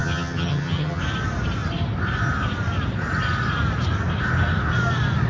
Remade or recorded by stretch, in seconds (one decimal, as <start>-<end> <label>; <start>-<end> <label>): 0.0-1.0 remade; 1.0-5.3 recorded